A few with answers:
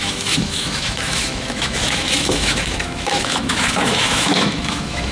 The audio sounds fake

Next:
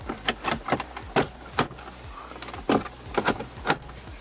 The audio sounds real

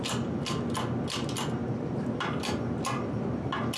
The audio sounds real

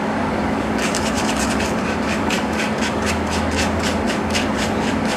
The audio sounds fake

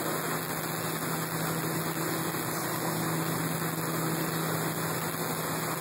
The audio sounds real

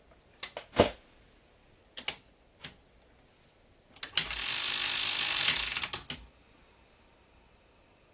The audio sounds real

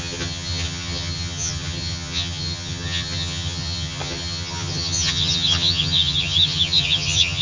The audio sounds fake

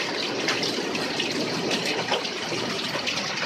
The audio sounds real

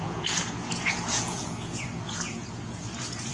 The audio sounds fake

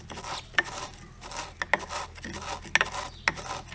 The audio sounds real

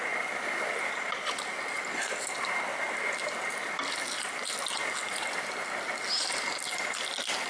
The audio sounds real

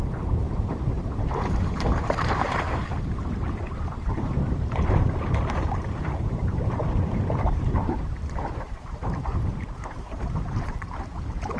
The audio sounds fake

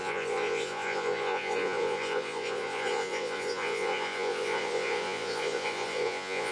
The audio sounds fake